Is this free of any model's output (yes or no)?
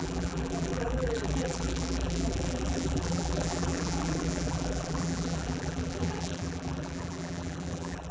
no